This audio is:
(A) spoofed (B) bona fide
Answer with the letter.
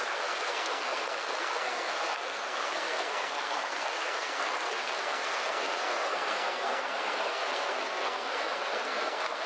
A